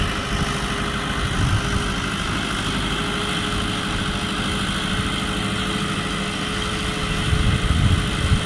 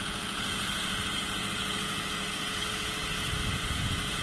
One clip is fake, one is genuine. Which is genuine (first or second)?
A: first